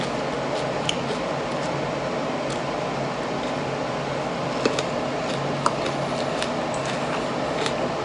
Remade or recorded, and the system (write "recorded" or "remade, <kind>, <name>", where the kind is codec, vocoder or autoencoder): recorded